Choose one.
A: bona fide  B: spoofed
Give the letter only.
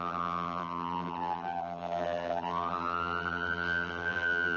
B